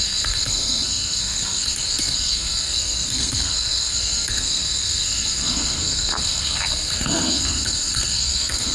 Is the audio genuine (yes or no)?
no